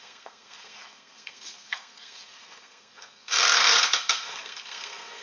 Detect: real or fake fake